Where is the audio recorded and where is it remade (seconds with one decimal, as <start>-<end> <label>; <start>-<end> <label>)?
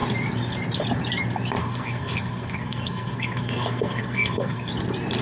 0.0-1.6 recorded; 1.6-4.7 remade; 4.7-5.2 recorded